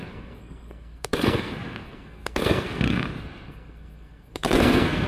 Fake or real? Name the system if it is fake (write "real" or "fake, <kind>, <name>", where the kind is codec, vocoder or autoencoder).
fake, codec, SNAC